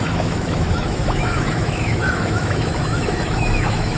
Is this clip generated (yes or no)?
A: yes